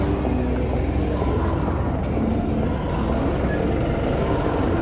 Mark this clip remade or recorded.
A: recorded